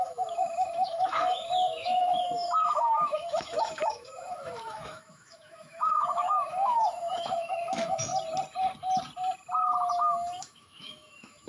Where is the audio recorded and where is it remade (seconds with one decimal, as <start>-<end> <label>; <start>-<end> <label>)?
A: 0.0-8.1 remade; 8.1-9.9 recorded; 9.9-11.5 remade